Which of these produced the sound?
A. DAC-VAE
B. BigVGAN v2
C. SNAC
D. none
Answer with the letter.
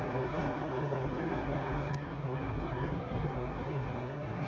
C